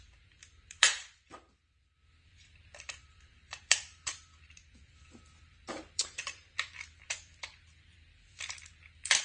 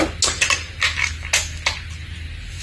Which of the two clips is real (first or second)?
second